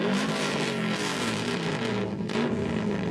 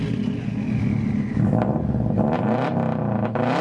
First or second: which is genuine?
second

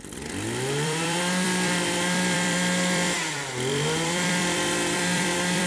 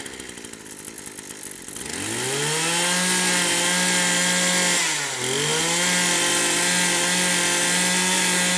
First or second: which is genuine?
second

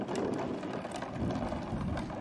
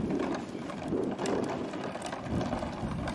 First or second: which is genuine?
first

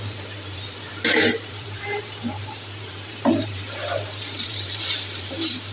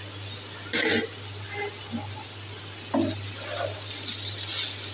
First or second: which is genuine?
second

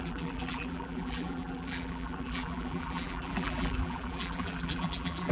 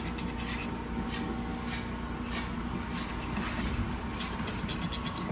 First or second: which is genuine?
second